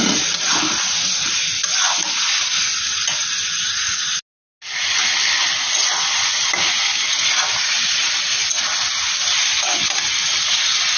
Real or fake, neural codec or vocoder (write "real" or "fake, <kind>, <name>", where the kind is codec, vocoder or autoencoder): real